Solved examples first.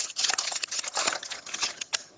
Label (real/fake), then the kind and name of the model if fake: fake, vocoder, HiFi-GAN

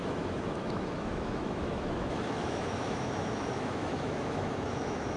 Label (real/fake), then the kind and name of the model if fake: fake, autoencoder, DAC-VAE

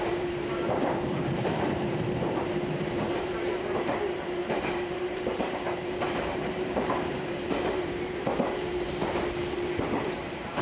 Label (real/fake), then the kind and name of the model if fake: fake, vocoder, BigVGAN v2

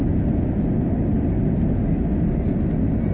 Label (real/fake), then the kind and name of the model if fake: real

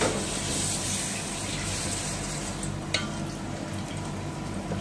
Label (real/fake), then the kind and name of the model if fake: real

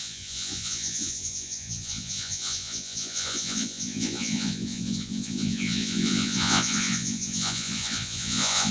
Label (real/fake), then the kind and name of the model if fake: fake, vocoder, Vocos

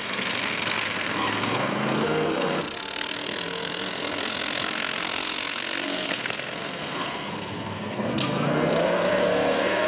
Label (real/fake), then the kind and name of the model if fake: fake, codec, SNAC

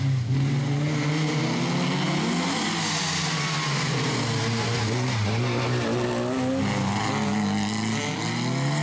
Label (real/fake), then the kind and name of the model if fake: real